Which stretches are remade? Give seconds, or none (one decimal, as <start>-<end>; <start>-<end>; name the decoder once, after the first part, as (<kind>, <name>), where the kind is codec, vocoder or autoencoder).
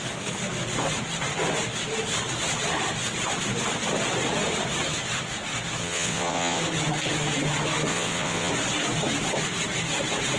5.8-6.6 (vocoder, WaveNeXt); 7.9-8.5